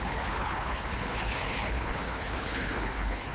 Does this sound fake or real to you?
fake